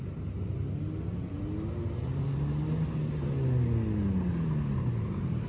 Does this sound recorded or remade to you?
recorded